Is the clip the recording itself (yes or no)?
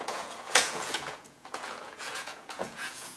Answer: no